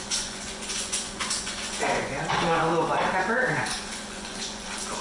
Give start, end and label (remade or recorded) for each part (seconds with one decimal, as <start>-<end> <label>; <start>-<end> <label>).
0.0-2.7 remade; 2.7-3.5 recorded; 3.5-5.0 remade